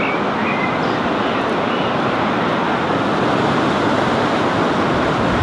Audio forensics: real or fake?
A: real